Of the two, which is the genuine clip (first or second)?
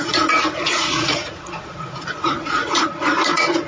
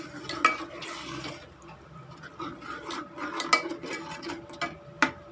second